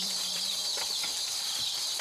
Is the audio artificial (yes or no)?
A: yes